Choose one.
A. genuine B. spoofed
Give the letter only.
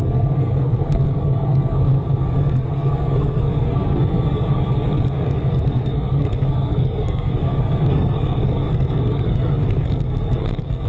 B